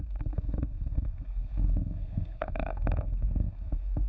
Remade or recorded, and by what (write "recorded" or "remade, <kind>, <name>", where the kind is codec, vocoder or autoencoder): remade, codec, SNAC